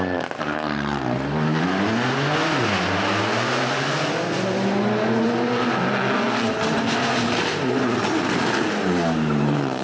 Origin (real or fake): real